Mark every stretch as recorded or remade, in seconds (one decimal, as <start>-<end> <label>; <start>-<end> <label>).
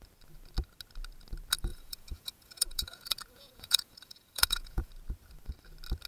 0.0-1.7 recorded; 1.7-4.9 remade; 4.9-6.1 recorded